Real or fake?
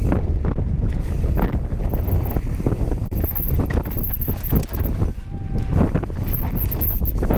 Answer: real